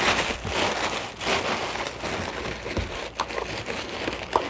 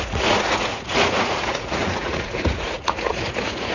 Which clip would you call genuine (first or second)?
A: first